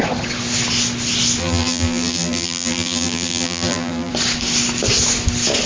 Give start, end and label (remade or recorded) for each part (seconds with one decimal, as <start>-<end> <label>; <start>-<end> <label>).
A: 0.0-1.4 recorded; 1.4-4.1 remade; 4.1-5.7 recorded